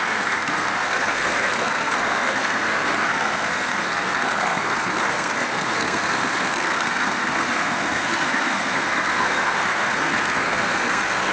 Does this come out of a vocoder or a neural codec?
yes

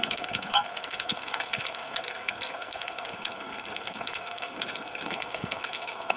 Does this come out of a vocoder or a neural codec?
yes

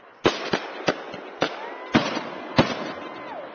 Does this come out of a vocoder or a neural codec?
no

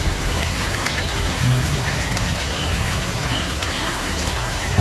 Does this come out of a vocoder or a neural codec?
yes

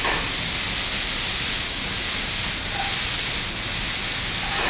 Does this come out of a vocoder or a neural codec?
no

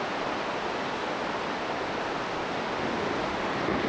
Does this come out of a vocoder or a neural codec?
no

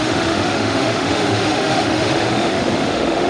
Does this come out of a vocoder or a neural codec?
yes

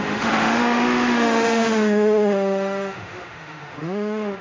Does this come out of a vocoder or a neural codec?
yes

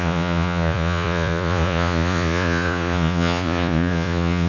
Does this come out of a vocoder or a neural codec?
yes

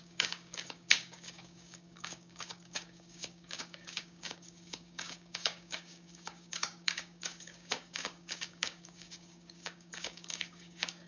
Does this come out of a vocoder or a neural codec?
yes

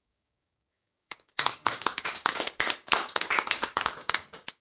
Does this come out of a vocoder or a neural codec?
yes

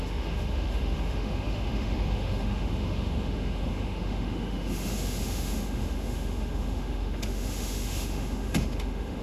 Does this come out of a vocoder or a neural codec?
yes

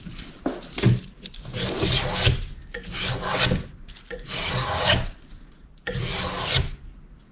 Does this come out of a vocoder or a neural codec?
no